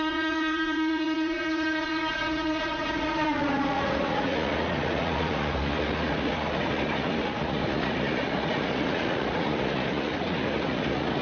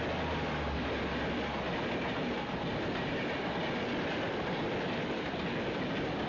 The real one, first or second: second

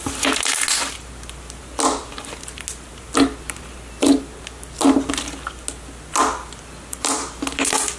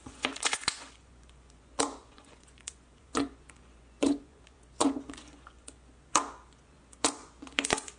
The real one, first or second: first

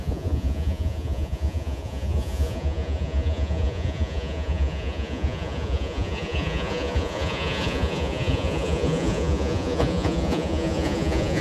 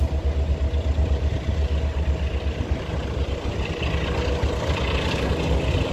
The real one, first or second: second